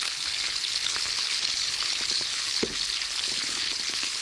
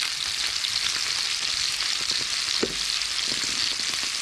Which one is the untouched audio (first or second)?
second